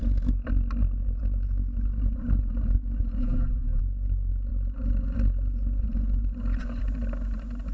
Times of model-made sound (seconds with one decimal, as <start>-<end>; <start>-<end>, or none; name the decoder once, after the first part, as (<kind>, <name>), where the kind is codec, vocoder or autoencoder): 3.2-3.8 (vocoder, BigVGAN v2)